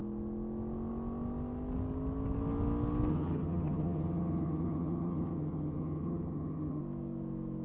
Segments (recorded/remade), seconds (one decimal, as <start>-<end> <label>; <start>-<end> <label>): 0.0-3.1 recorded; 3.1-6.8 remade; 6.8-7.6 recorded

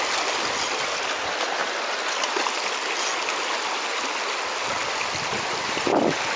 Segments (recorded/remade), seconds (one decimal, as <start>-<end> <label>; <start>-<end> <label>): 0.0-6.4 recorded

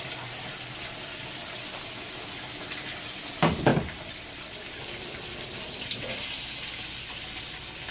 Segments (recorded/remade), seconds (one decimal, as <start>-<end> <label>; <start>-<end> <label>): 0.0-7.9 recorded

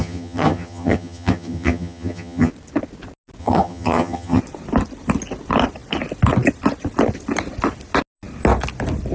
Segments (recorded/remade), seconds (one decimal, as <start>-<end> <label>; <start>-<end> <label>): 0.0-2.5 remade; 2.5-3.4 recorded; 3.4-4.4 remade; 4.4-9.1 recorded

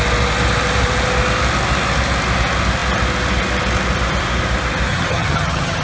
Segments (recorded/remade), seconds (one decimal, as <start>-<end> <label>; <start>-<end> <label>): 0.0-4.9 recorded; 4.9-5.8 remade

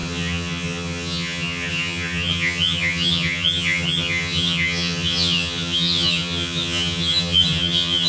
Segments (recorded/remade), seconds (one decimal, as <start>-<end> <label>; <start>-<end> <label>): 0.0-8.1 remade